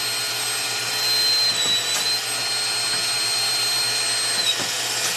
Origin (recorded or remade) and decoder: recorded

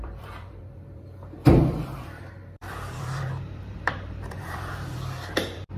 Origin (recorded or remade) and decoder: remade, vocoder, BigVGAN v2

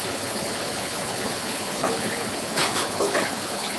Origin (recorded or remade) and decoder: remade, codec, HILCodec